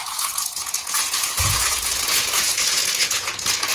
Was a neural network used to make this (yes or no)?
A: yes